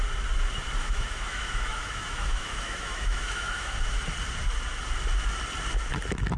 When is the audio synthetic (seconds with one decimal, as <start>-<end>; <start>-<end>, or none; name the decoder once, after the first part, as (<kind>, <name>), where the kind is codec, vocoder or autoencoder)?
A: 0.8-4.0 (autoencoder, DAC-VAE)